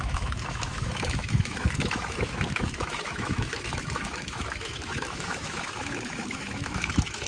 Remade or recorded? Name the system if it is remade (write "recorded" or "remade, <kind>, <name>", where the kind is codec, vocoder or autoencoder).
remade, autoencoder, DAC-VAE